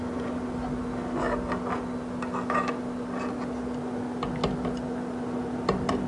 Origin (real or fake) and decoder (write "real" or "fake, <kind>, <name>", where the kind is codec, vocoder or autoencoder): real